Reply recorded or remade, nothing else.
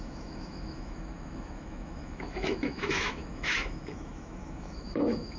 remade